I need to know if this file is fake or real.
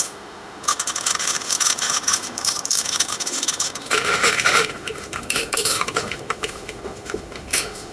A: fake